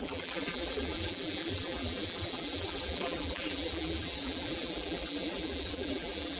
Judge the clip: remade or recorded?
remade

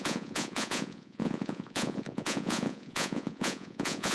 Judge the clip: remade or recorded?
remade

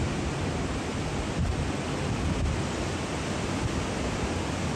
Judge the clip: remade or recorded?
recorded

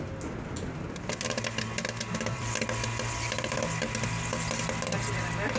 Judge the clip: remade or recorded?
recorded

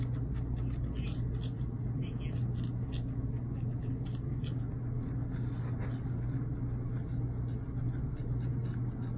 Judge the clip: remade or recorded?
recorded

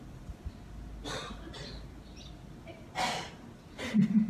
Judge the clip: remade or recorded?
recorded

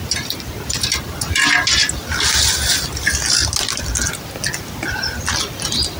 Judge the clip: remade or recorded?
recorded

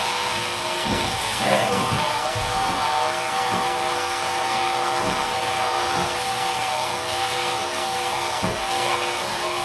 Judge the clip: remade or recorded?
remade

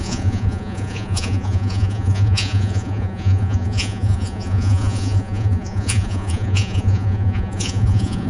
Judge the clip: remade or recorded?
remade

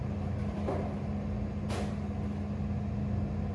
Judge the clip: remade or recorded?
recorded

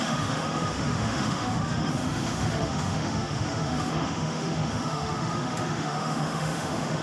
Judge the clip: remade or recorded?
remade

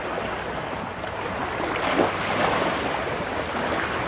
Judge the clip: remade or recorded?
recorded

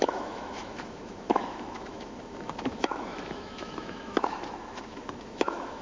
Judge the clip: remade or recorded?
remade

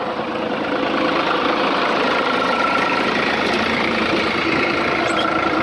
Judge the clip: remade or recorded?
remade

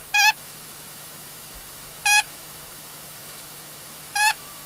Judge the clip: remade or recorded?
remade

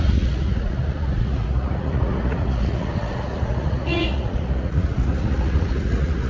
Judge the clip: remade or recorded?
remade